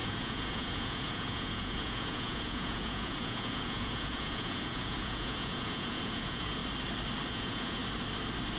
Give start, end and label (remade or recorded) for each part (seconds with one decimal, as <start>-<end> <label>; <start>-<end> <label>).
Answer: 0.0-6.6 remade; 6.6-7.3 recorded; 7.3-7.8 remade; 7.8-8.6 recorded